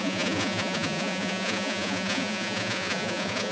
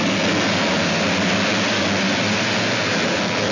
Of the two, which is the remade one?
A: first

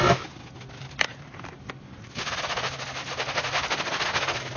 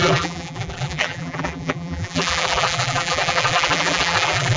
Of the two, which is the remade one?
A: second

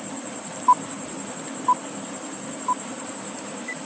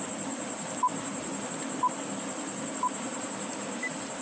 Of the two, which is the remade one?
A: first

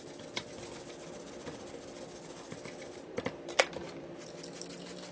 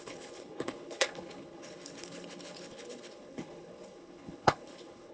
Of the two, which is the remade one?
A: second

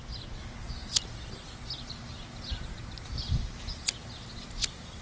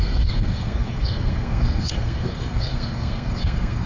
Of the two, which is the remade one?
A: second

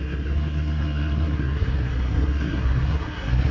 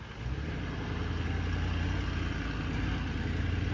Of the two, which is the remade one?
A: first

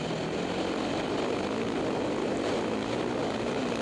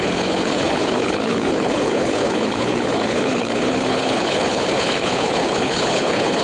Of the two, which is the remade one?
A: second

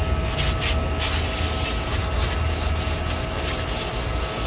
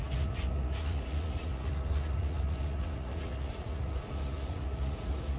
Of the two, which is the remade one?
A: second